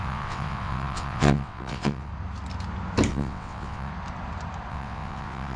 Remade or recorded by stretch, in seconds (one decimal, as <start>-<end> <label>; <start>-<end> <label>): 0.0-2.1 remade; 2.1-3.1 recorded; 3.1-3.9 remade; 3.9-4.7 recorded; 4.7-5.6 remade